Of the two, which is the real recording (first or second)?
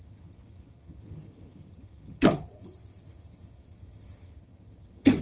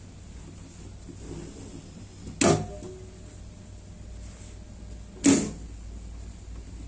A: second